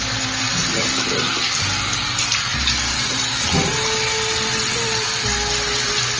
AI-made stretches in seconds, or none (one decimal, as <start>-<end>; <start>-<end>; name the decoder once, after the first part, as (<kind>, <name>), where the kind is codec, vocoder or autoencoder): none